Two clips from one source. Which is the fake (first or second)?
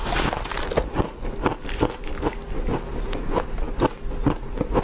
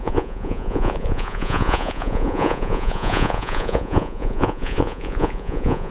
second